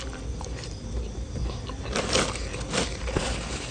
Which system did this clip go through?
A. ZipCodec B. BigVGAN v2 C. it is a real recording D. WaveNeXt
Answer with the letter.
C